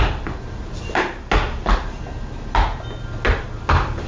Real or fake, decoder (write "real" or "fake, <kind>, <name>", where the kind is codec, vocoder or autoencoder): real